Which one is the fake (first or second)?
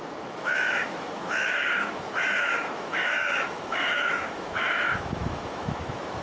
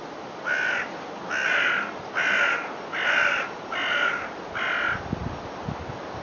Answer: first